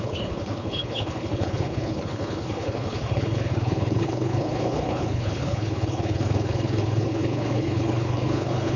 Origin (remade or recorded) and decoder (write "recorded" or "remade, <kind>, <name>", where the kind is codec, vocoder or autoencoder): remade, codec, HILCodec